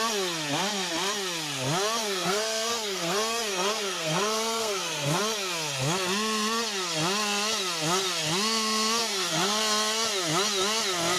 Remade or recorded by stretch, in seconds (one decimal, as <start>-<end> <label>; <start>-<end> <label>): 0.0-2.0 recorded; 2.0-5.2 remade; 5.2-9.0 recorded; 9.0-9.6 remade; 9.6-11.2 recorded